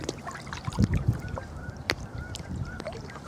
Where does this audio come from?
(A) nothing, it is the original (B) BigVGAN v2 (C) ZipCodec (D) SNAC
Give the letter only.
B